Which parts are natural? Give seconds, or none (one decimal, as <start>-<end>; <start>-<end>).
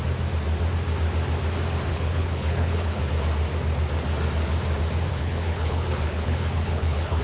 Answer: 0.0-1.9; 3.0-5.1